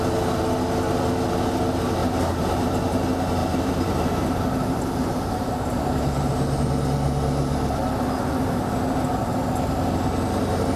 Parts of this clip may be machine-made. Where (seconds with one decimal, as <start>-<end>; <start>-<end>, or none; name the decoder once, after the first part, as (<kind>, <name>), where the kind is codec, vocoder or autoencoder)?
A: 2.0-2.7 (vocoder, BigVGAN v2); 3.4-6.7